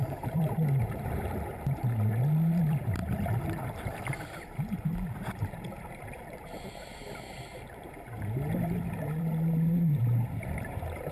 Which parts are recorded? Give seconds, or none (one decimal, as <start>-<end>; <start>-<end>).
none